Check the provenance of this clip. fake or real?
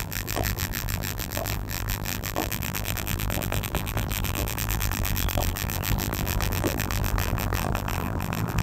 fake